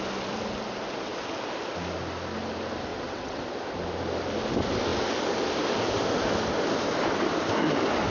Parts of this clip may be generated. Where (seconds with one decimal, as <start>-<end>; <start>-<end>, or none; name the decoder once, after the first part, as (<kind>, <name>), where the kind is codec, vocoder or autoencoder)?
2.9-3.4 (vocoder, WaveNeXt)